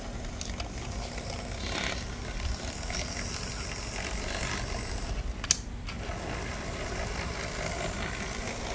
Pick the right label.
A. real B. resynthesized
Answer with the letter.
A